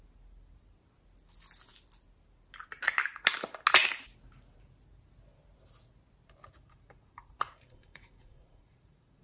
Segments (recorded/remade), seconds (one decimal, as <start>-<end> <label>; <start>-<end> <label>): 0.0-6.5 recorded; 6.5-9.2 remade